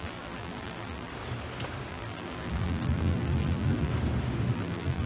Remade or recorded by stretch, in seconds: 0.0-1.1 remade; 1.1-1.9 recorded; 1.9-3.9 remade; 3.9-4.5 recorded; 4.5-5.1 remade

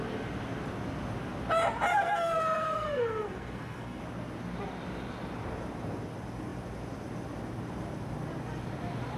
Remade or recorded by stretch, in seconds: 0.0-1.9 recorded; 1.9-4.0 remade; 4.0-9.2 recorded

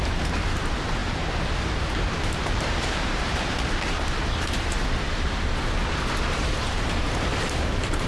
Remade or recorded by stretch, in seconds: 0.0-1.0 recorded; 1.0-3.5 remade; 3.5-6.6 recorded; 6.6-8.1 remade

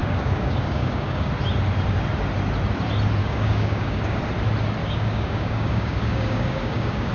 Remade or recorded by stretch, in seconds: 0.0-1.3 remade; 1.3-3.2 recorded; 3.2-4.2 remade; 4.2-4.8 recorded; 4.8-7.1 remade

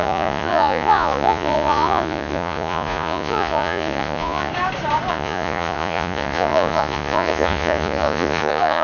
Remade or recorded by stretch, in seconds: 0.0-4.5 remade; 4.5-5.1 recorded; 5.1-8.8 remade

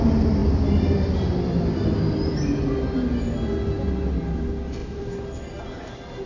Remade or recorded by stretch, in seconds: 0.0-6.3 recorded

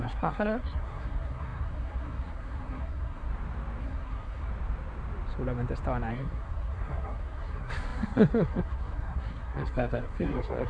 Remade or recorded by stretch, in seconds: 0.0-3.3 remade; 3.3-3.8 recorded; 3.8-4.5 remade; 4.5-6.1 recorded; 6.1-10.7 remade